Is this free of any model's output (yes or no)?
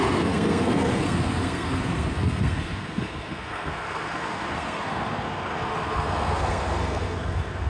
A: no